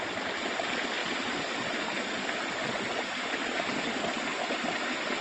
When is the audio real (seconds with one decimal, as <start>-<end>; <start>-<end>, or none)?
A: 0.0-2.6; 3.7-5.2